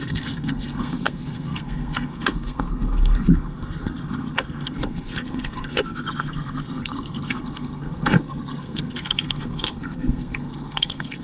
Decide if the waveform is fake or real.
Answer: fake